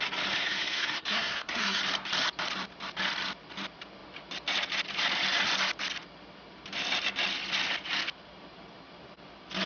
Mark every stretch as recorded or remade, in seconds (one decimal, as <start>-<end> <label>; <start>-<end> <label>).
0.0-0.4 recorded; 0.4-1.8 remade; 1.8-9.7 recorded